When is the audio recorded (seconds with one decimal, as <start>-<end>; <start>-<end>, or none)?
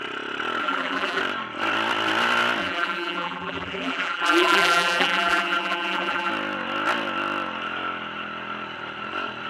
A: 0.0-0.6; 1.2-2.6; 6.3-9.5